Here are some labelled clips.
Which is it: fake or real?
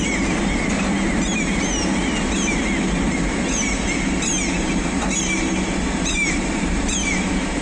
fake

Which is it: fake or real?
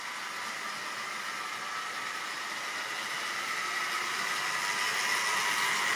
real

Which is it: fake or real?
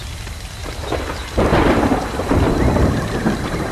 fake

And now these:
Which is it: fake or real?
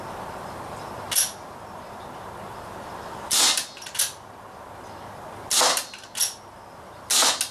real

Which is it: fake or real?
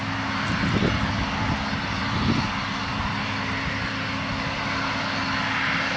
real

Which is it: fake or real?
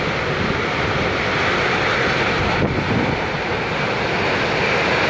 real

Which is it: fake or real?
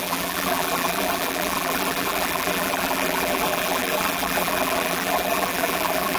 fake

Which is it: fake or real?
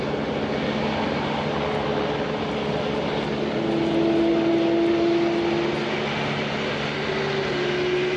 real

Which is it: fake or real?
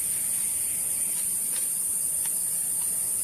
real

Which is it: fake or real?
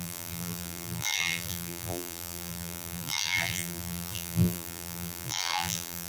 fake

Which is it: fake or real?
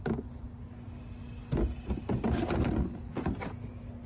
real